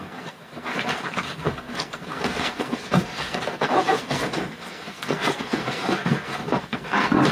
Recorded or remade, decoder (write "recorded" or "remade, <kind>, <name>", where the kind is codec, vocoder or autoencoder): remade, codec, SNAC